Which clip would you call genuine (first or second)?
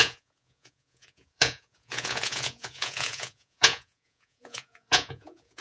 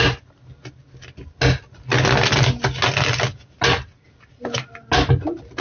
second